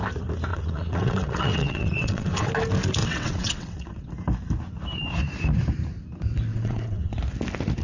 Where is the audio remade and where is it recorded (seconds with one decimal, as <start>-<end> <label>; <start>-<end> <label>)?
0.0-0.5 recorded; 0.5-2.5 remade; 2.5-3.0 recorded; 3.0-4.1 remade; 4.1-6.5 recorded; 6.5-7.1 remade; 7.1-7.8 recorded